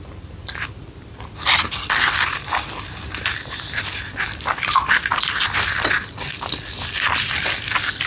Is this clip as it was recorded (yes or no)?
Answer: no